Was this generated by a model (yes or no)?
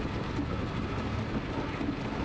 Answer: no